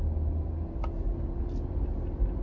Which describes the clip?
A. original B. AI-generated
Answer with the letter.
A